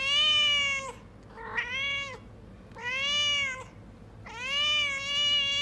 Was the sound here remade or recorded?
recorded